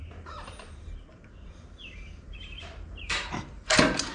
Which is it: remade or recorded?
remade